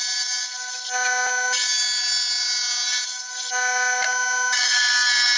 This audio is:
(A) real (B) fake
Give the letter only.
A